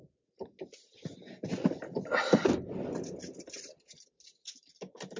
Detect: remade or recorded recorded